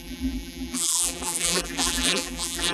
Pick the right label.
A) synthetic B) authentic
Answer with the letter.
A